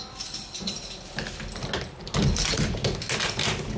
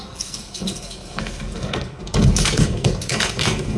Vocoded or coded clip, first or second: second